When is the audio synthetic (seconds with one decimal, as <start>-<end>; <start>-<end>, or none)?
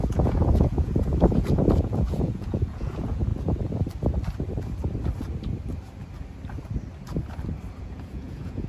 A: 0.0-3.3; 7.8-8.7